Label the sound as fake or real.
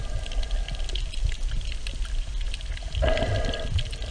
real